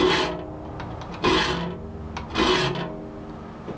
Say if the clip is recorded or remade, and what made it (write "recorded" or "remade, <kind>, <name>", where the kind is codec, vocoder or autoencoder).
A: recorded